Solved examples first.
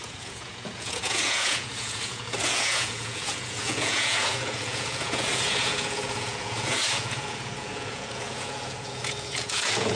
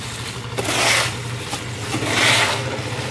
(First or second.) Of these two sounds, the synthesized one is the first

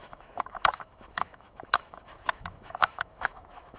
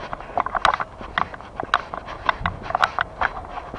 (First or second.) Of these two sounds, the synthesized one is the first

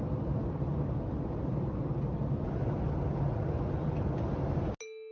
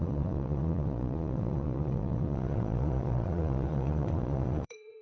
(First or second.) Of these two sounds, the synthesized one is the second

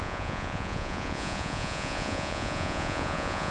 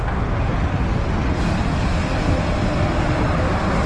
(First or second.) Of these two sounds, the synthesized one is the first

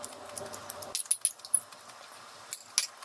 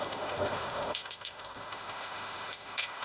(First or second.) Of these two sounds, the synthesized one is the second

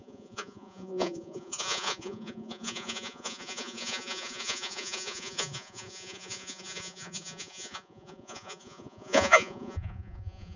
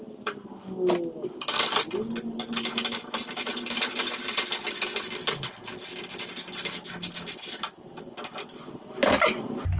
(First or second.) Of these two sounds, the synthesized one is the first